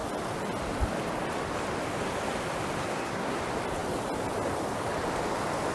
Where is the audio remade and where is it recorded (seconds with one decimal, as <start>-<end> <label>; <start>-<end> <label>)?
0.0-2.8 recorded; 2.8-3.4 remade; 3.4-5.7 recorded